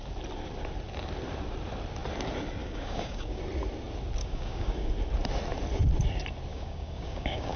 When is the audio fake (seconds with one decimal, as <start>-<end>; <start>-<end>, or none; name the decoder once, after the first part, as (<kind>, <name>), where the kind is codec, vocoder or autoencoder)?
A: 2.6-3.4 (codec, DAC); 4.2-4.9; 6.5-7.6